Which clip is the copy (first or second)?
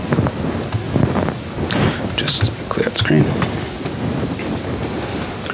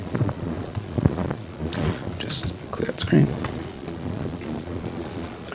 second